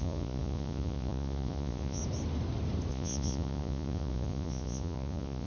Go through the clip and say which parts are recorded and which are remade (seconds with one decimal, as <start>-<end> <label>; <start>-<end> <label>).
0.0-2.0 remade; 2.0-2.9 recorded; 2.9-5.5 remade